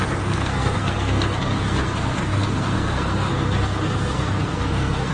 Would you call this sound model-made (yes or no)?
yes